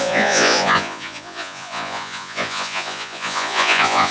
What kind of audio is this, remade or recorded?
remade